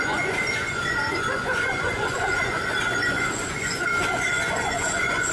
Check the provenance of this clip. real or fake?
fake